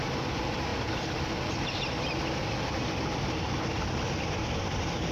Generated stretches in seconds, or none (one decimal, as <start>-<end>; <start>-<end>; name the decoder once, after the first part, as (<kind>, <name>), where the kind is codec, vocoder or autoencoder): 0.7-1.2 (vocoder, BigVGAN v2)